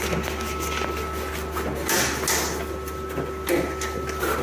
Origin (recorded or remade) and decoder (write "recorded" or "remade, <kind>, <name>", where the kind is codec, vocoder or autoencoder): recorded